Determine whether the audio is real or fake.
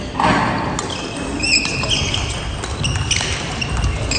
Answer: real